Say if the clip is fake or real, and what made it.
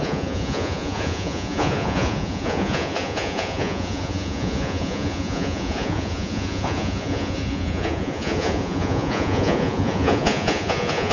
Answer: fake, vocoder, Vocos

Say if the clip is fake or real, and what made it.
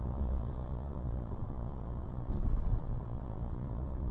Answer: fake, vocoder, Vocos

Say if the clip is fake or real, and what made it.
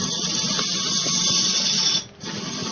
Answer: real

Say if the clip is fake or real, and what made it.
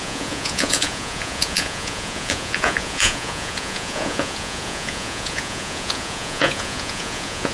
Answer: fake, vocoder, Vocos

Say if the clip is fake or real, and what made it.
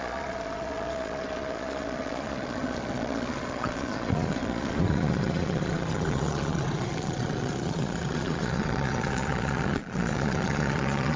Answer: fake, vocoder, Vocos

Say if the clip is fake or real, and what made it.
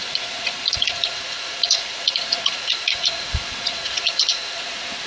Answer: fake, vocoder, Vocos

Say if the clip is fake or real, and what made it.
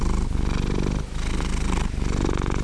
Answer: real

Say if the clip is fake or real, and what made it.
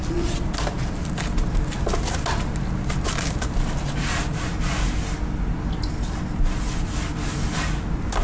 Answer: real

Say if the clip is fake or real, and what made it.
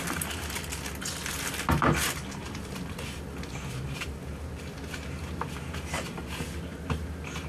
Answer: real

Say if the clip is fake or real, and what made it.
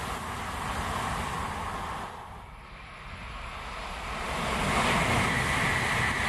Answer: real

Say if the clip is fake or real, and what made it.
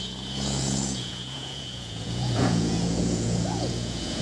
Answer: fake, vocoder, Vocos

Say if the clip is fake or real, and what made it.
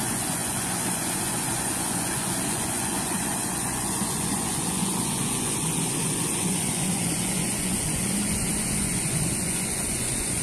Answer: fake, vocoder, Vocos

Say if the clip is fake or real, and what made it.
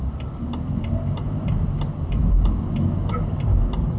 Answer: real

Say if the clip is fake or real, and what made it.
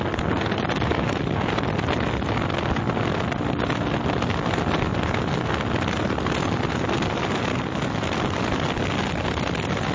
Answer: real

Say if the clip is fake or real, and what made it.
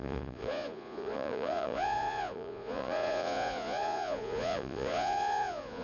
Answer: fake, vocoder, Vocos